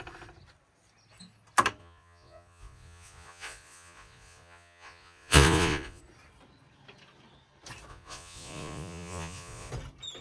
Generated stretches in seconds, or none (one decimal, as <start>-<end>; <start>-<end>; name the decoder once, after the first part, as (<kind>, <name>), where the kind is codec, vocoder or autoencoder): 1.8-6.0 (vocoder, Vocos); 7.9-9.7